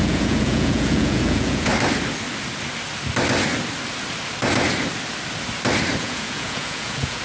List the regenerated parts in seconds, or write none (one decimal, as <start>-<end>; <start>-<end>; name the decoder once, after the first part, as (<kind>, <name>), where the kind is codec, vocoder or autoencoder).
0.0-1.7 (vocoder, Vocos); 6.0-7.2